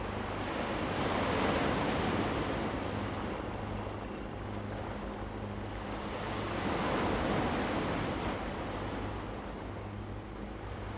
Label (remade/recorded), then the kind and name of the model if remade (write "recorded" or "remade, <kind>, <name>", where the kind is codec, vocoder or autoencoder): recorded